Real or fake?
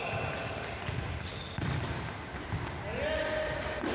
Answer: real